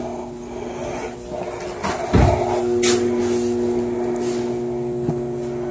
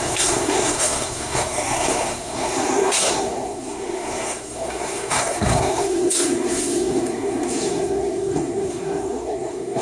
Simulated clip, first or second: second